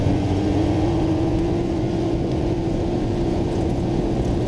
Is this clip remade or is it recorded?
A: remade